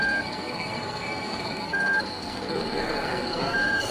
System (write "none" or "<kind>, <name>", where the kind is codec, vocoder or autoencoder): codec, SNAC